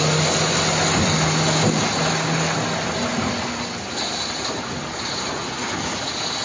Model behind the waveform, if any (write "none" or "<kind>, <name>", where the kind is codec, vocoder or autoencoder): none